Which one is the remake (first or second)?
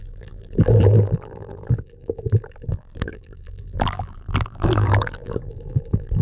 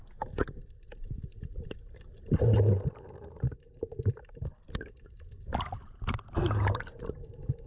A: first